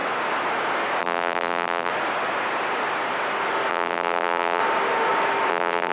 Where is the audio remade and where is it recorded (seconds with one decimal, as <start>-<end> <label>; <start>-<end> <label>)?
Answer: 0.0-1.0 recorded; 1.0-1.9 remade; 1.9-3.7 recorded; 3.7-4.6 remade; 4.6-5.5 recorded; 5.5-5.9 remade